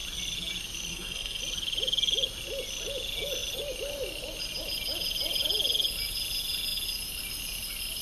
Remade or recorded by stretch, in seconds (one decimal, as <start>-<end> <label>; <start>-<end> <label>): 0.0-0.9 recorded; 0.9-1.4 remade; 1.4-8.0 recorded